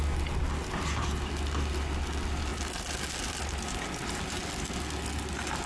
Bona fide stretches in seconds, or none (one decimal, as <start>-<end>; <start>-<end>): 0.0-5.7